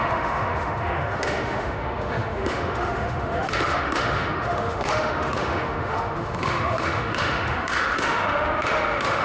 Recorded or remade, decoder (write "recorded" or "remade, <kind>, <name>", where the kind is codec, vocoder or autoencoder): remade, autoencoder, DAC-VAE